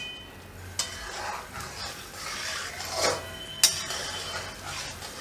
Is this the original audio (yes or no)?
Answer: yes